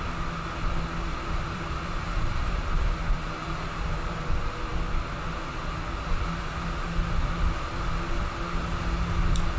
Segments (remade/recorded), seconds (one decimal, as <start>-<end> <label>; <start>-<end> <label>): 0.0-1.1 recorded; 1.1-4.3 remade; 4.3-9.6 recorded